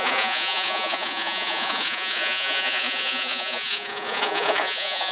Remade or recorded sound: remade